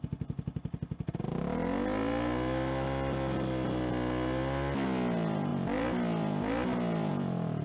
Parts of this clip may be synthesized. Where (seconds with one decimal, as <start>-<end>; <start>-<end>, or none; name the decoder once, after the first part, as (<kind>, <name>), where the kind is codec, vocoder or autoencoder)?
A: none